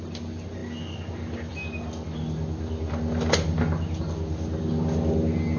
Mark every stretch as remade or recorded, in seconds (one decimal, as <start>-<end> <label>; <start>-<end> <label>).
0.0-5.6 recorded